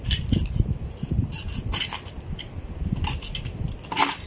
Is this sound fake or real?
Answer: real